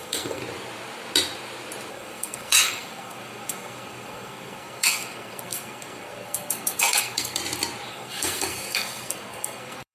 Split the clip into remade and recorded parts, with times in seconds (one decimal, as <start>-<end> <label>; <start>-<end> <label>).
0.0-0.4 remade; 0.4-1.9 recorded; 1.9-7.4 remade; 7.4-7.9 recorded; 7.9-9.9 remade